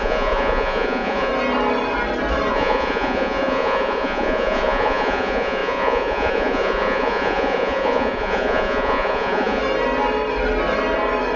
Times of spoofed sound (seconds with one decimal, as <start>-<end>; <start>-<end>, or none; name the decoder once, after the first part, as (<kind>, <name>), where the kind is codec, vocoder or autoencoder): 0.0-1.3 (vocoder, Vocos); 2.5-9.6